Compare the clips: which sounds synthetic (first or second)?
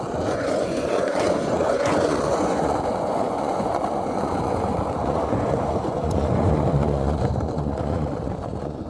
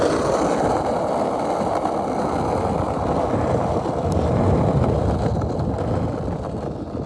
first